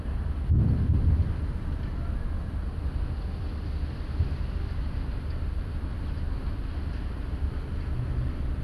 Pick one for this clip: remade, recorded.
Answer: recorded